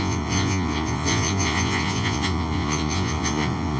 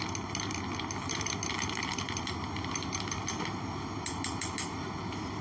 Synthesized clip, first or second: first